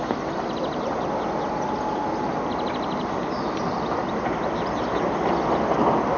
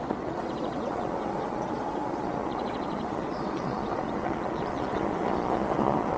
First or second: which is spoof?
second